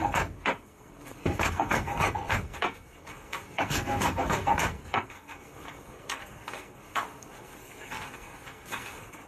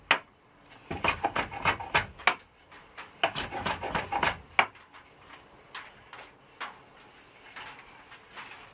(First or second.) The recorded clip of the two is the second